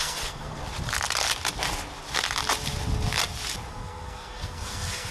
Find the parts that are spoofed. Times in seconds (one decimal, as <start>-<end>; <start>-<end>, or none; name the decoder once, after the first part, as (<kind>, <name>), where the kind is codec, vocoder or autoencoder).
0.0-0.6 (codec, SNAC); 3.7-5.1